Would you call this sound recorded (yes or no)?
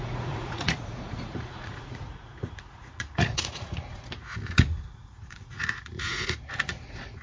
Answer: no